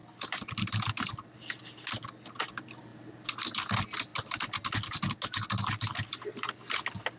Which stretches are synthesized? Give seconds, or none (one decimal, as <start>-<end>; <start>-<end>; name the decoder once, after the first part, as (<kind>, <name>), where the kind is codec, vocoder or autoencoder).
0.0-0.8 (vocoder, BigVGAN v2); 2.9-3.6